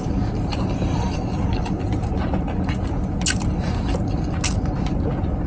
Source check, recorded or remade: recorded